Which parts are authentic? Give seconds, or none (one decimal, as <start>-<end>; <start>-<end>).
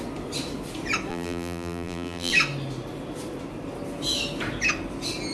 0.0-1.1; 2.3-5.3